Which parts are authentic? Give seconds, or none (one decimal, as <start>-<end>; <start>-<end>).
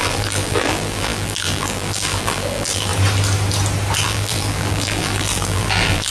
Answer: 2.9-4.0